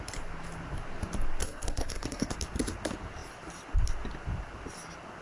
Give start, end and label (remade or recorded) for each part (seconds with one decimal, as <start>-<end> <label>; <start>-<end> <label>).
0.0-1.4 recorded; 1.4-2.3 remade; 2.3-5.2 recorded